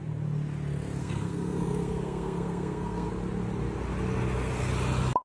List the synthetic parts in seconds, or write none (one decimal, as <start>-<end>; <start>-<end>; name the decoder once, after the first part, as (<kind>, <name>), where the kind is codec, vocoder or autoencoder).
1.0-3.1 (codec, SNAC)